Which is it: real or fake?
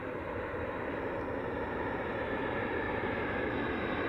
fake